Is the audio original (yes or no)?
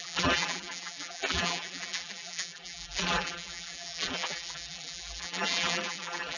no